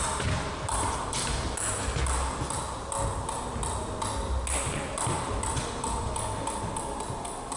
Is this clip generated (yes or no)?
no